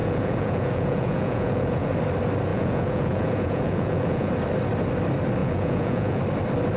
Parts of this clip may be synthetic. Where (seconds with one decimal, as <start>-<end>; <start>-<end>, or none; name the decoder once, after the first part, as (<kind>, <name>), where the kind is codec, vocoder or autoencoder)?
0.0-1.9 (vocoder, Vocos); 2.5-4.3; 5.4-6.2